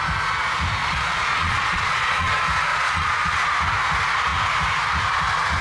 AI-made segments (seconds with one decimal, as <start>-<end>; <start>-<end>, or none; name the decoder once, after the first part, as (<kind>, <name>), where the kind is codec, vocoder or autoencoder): 0.8-2.3 (vocoder, Vocos); 2.7-3.5